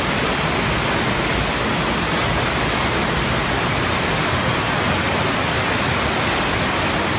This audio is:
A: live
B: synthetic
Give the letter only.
A